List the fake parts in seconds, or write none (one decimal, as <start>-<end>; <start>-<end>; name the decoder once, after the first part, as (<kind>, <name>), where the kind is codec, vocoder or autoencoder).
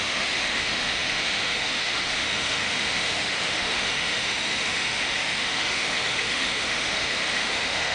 0.0-7.9 (autoencoder, DAC-VAE)